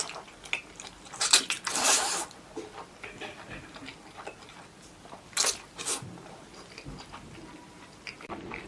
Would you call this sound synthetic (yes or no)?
no